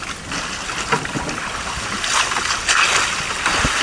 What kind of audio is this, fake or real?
real